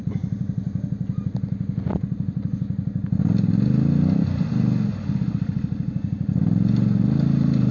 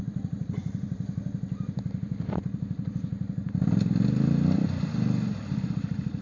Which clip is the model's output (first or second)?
second